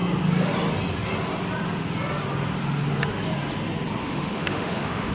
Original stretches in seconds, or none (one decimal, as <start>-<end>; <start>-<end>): 0.0-4.0